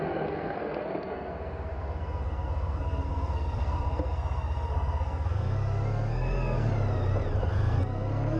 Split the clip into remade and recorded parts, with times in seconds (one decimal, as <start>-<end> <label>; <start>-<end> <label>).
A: 0.0-6.7 remade; 6.7-7.4 recorded; 7.4-8.4 remade